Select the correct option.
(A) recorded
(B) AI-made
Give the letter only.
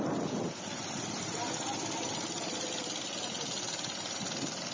B